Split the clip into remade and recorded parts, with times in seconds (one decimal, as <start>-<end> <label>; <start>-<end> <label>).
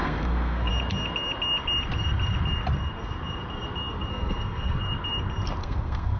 0.0-0.7 remade; 0.7-4.1 recorded; 4.1-4.8 remade; 4.8-5.6 recorded; 5.6-6.2 remade